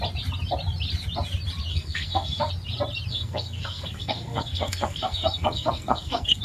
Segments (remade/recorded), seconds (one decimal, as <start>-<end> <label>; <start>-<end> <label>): 0.0-1.7 recorded; 1.7-2.5 remade; 2.5-3.1 recorded; 3.1-6.4 remade